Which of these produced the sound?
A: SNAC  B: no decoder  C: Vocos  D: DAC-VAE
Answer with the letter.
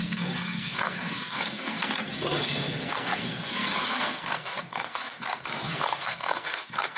A